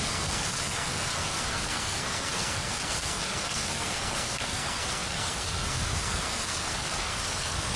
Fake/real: fake